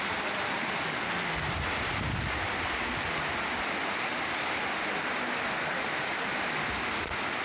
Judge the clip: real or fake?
real